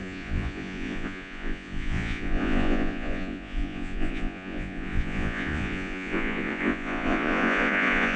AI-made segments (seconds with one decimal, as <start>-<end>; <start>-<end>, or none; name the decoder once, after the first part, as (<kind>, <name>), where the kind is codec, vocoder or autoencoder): 0.0-8.2 (vocoder, Vocos)